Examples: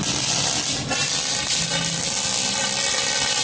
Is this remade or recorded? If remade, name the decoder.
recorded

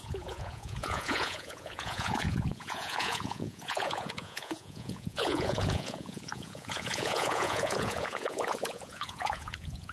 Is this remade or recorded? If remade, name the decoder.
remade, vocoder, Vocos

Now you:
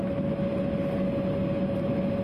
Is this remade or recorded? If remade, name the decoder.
recorded